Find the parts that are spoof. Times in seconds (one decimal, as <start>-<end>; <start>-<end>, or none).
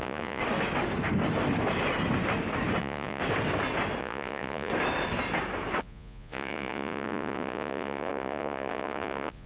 0.0-0.4; 2.8-3.2; 4.0-4.7; 5.8-9.5